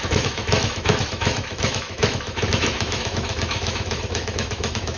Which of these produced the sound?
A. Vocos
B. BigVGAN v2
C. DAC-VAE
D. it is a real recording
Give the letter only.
C